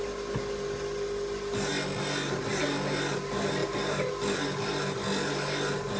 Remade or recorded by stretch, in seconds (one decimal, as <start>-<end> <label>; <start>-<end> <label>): 0.0-6.0 recorded